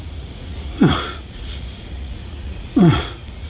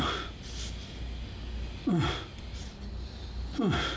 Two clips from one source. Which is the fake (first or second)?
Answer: first